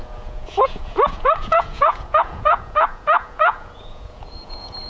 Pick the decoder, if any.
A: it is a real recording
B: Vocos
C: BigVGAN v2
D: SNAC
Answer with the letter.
B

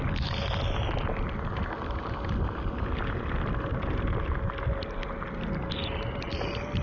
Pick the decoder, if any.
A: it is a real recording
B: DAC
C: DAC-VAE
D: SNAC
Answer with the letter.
A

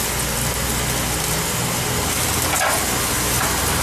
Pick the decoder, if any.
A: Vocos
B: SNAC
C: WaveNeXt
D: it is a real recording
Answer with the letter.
D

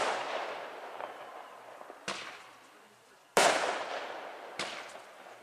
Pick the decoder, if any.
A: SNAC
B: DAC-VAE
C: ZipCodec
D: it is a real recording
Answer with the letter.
D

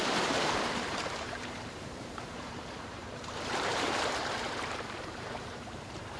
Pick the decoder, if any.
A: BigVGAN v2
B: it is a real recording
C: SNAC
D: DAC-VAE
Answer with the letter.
A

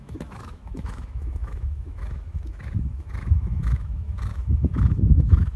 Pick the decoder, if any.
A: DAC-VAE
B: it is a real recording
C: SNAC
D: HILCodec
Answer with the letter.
A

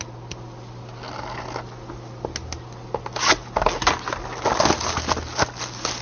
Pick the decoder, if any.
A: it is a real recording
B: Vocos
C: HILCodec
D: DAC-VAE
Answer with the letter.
A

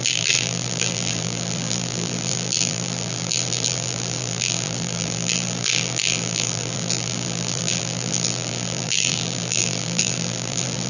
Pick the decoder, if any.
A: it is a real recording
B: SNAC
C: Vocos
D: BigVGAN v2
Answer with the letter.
D